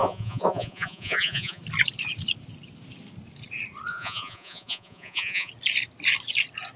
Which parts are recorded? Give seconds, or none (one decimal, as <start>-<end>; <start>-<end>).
1.6-3.9; 5.5-6.8